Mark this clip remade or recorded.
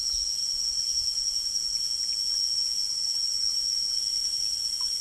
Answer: recorded